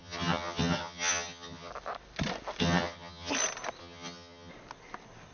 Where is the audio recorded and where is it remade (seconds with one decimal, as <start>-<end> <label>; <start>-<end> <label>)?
0.0-1.7 remade; 1.7-2.6 recorded; 2.6-3.3 remade; 3.3-3.8 recorded; 3.8-4.5 remade; 4.5-5.3 recorded